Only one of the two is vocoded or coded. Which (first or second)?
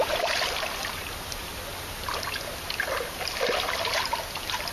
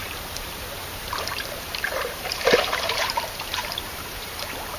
second